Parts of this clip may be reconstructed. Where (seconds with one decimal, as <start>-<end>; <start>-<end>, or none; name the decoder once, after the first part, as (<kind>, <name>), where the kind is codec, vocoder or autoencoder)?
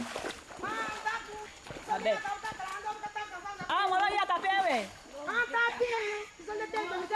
5.7-6.3 (codec, HILCodec)